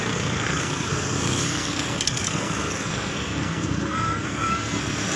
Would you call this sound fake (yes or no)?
yes